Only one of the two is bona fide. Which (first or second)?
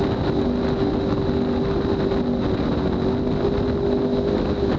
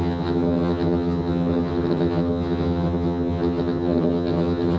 first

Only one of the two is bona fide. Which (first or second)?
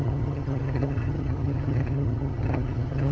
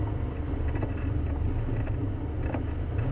second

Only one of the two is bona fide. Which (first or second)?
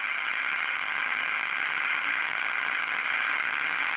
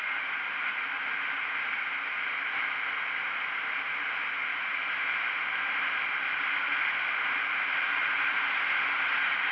second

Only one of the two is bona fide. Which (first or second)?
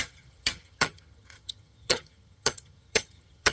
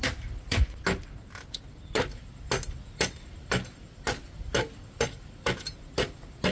second